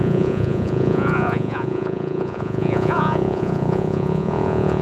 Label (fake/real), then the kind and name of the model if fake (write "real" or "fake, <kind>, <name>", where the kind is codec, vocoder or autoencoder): fake, vocoder, Vocos